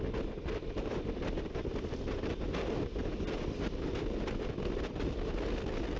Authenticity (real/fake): real